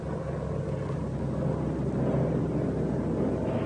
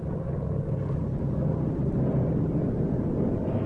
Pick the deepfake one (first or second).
second